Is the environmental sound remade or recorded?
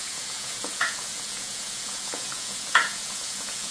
remade